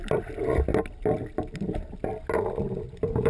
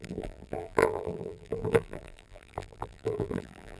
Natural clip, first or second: first